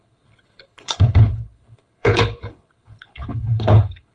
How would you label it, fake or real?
fake